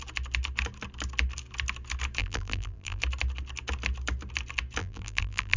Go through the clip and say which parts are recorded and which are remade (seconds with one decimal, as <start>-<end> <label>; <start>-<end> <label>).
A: 0.0-2.2 recorded; 2.2-3.0 remade; 3.0-4.8 recorded; 4.8-5.6 remade